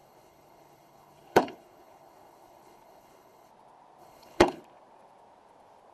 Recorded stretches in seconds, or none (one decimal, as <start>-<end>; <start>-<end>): 3.5-4.0; 4.6-5.9